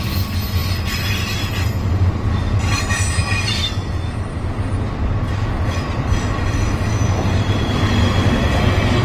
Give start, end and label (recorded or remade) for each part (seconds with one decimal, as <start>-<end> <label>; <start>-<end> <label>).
0.0-9.0 recorded